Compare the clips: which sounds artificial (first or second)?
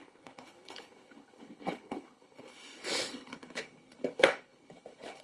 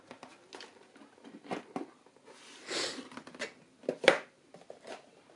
first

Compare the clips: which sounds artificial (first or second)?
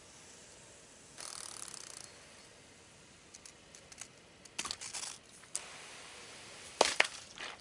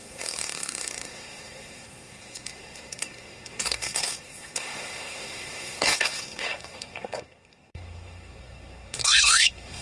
second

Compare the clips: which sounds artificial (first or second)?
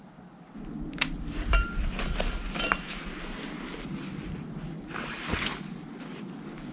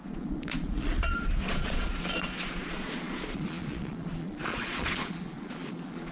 second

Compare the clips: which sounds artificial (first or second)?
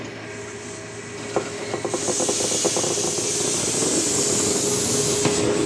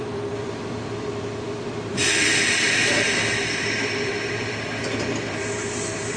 second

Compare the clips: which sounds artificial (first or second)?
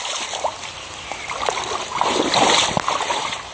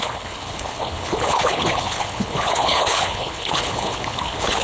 second